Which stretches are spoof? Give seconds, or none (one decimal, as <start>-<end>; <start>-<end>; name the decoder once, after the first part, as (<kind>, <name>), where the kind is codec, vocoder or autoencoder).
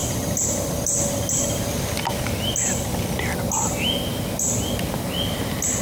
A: none